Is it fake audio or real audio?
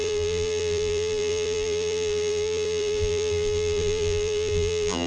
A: fake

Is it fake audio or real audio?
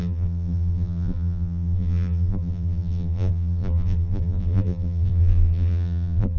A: fake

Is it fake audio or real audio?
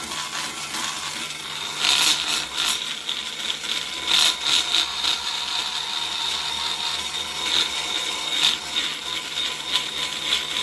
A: real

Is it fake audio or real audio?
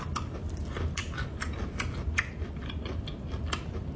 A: real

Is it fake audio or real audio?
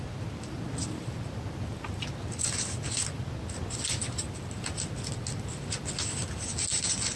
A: real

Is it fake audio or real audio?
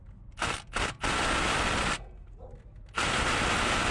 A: real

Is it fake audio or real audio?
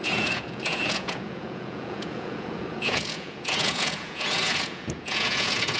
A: fake